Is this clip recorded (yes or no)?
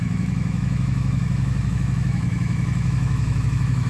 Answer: no